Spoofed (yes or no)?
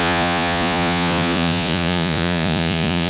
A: yes